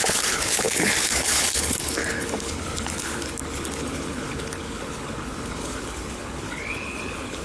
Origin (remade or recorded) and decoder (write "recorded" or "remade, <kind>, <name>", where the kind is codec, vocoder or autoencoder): remade, codec, HILCodec